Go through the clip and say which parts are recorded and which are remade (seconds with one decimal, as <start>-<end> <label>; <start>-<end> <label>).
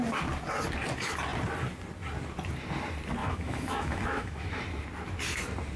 0.0-3.2 recorded; 3.2-4.6 remade; 4.6-5.8 recorded